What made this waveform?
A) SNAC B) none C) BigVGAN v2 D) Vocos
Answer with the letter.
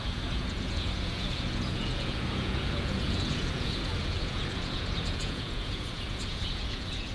D